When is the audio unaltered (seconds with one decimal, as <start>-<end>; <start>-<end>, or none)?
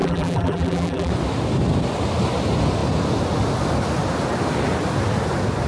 1.1-5.7